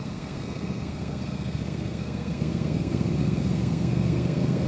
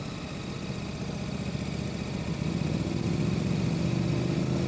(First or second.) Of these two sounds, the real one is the second